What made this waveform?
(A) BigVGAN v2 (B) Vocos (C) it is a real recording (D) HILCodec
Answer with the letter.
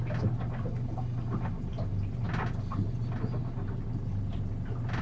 C